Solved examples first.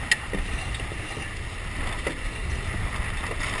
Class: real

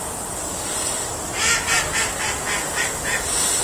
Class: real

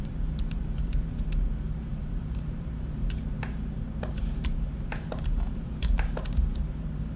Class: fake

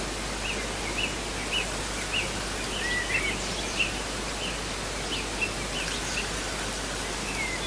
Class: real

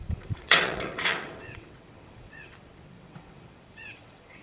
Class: fake